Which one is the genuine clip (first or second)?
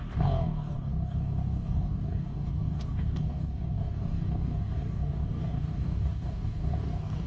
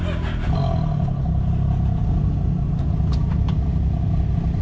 second